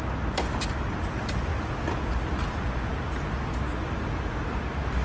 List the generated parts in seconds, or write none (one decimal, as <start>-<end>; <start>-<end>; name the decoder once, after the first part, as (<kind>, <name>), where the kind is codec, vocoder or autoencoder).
none